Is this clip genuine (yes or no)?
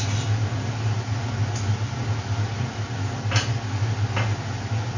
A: yes